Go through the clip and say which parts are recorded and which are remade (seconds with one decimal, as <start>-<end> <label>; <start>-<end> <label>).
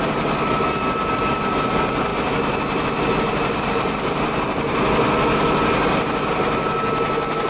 0.0-7.5 recorded